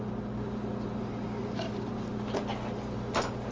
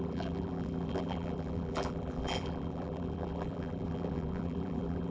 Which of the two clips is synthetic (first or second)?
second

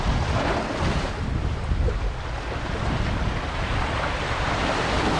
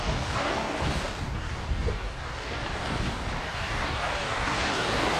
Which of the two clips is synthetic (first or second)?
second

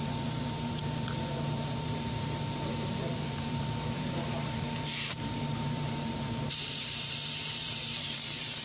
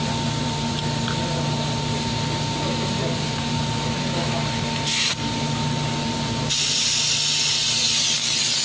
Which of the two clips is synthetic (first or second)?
first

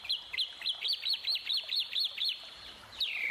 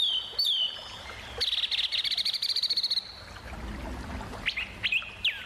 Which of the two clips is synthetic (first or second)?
first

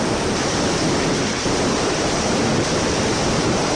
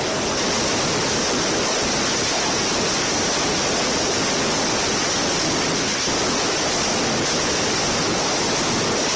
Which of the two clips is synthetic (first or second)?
first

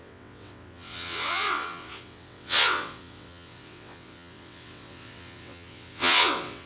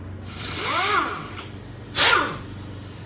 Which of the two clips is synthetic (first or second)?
first